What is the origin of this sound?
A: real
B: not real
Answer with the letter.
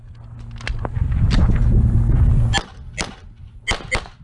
A